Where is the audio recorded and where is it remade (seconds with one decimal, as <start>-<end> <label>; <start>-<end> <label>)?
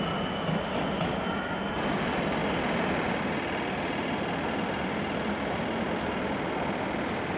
0.0-7.4 recorded